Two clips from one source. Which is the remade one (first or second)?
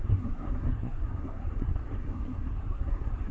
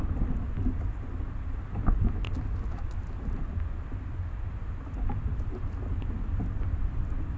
first